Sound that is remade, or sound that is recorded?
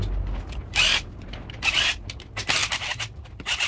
recorded